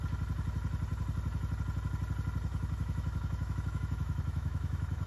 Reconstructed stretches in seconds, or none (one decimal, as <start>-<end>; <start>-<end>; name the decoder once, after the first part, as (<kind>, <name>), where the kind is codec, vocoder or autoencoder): 2.5-5.1 (autoencoder, DAC-VAE)